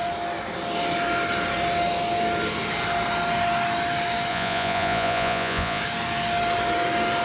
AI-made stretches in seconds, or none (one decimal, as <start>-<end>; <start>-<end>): 4.3-5.8